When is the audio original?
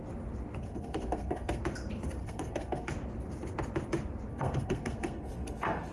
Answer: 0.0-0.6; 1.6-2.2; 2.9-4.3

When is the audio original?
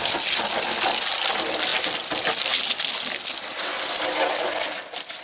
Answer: 0.0-5.2